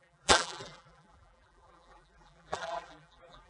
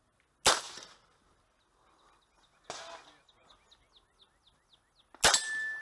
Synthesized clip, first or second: first